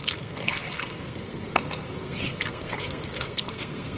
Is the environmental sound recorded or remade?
remade